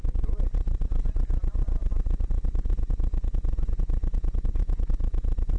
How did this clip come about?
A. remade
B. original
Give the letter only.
B